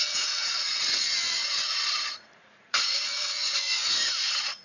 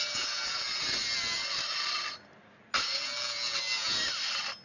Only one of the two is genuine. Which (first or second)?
second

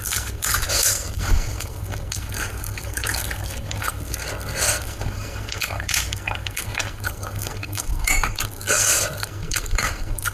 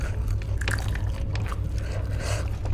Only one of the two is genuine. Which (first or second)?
second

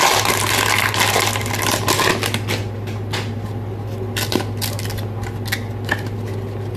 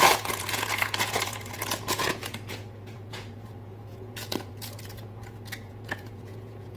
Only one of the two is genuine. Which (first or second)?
first